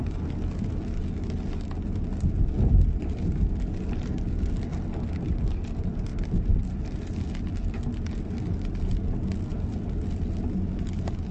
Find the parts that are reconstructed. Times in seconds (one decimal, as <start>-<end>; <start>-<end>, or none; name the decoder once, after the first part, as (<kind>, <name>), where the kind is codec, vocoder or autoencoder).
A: none

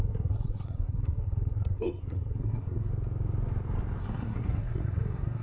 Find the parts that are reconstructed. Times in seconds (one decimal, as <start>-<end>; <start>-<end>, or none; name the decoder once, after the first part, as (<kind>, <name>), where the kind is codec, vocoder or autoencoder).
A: 0.0-2.9 (codec, SNAC); 4.0-5.4